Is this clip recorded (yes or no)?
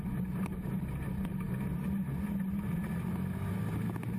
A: yes